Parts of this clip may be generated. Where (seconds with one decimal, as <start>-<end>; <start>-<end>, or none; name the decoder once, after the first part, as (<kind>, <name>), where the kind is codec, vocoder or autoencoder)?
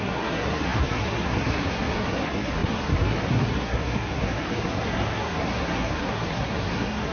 0.0-7.1 (codec, SNAC)